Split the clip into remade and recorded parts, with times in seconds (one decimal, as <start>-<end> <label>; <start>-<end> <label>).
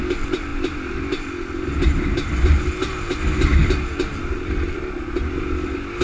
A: 0.0-0.5 recorded; 0.5-2.0 remade; 2.0-3.6 recorded; 3.6-5.4 remade; 5.4-6.0 recorded